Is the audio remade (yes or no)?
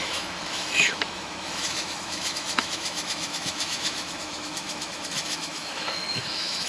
yes